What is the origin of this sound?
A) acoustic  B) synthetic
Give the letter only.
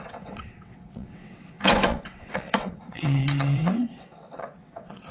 B